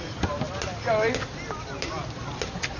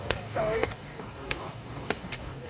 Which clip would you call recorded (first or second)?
first